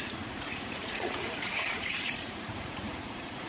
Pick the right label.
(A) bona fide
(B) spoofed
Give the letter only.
B